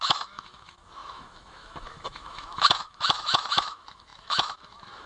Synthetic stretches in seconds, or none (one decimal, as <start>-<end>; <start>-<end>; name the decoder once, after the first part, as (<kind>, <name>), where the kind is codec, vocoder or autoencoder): 0.0-5.1 (autoencoder, DAC-VAE)